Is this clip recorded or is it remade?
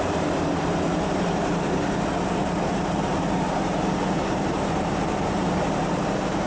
remade